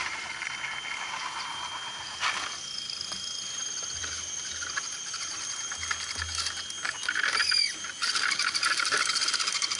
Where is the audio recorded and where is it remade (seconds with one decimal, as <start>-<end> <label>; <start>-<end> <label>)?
0.0-9.8 recorded